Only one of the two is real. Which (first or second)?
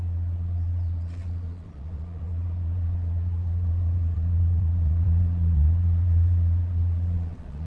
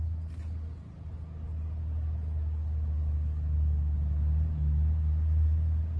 second